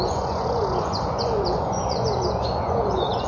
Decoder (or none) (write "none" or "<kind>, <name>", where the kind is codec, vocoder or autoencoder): vocoder, Vocos